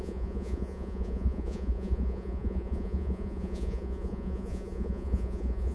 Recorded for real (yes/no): no